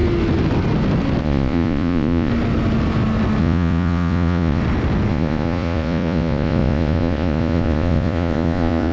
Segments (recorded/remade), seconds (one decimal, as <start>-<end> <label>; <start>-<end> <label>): 0.0-1.2 recorded; 1.2-2.3 remade; 2.3-3.4 recorded; 3.4-4.6 remade; 4.6-5.1 recorded; 5.1-8.9 remade